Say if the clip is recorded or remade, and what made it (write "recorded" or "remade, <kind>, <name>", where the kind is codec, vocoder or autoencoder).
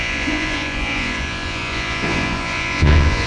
remade, vocoder, Vocos